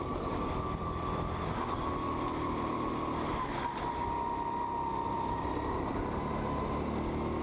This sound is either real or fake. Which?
real